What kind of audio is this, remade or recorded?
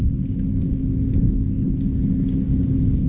remade